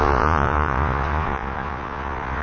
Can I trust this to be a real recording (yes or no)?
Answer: no